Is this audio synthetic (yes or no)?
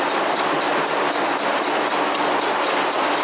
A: no